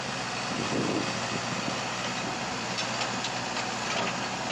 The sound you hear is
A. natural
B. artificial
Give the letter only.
A